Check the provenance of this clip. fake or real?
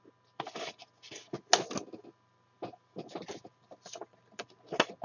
real